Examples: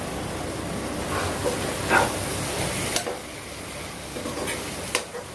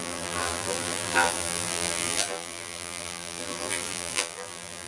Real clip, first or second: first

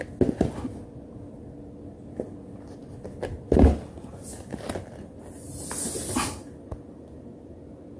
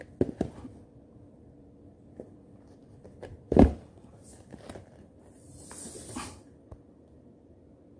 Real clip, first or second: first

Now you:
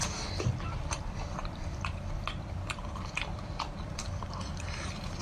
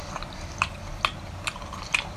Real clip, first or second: second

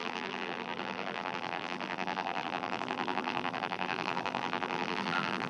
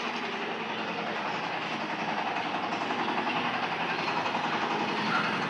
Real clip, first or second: second